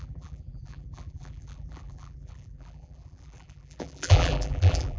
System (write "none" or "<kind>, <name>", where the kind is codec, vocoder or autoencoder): vocoder, BigVGAN v2